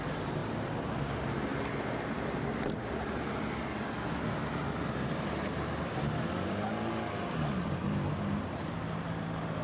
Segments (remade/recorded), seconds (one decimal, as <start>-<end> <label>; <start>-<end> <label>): 0.0-9.6 recorded